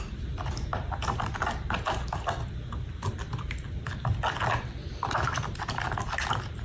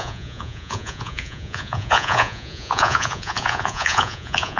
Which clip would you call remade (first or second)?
second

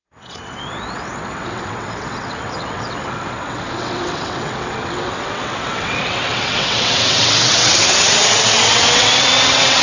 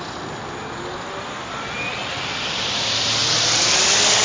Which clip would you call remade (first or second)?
first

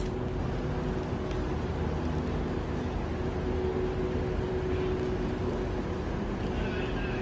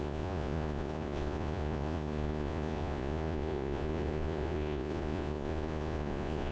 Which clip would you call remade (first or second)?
second